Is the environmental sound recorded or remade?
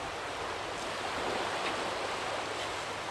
recorded